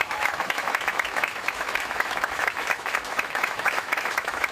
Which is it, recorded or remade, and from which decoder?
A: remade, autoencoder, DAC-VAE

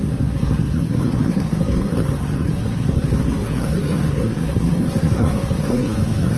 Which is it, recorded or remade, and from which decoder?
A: remade, codec, SNAC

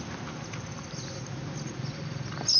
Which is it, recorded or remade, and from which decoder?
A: recorded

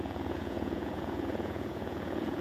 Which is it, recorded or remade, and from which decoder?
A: remade, vocoder, Vocos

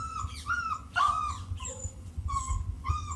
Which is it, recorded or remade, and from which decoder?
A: remade, vocoder, Vocos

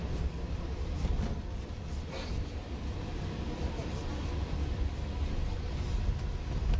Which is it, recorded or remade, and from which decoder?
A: recorded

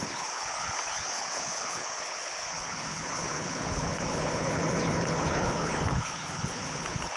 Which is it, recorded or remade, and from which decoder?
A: remade, codec, HILCodec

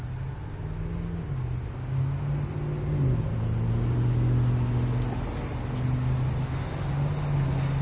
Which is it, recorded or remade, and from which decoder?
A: recorded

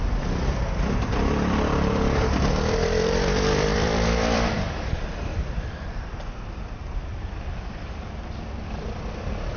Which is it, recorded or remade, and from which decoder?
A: remade, vocoder, BigVGAN v2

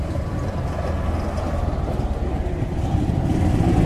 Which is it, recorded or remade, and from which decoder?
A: recorded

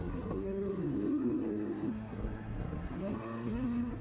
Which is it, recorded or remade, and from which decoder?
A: remade, codec, SNAC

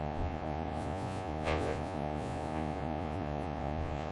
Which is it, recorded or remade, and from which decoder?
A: remade, vocoder, Vocos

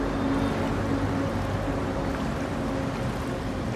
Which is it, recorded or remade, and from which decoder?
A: recorded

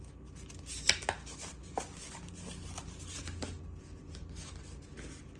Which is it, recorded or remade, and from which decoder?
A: recorded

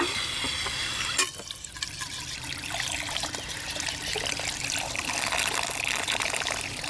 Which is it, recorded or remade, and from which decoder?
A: recorded